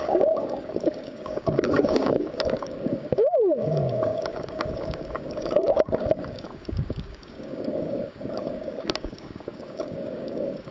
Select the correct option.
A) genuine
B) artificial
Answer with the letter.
B